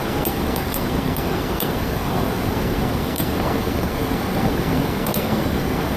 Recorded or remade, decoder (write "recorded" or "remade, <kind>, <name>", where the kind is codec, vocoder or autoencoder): remade, codec, SNAC